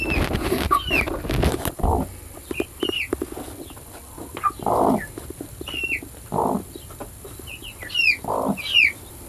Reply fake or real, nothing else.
real